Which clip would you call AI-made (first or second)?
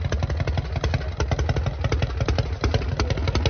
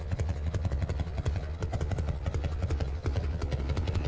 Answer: second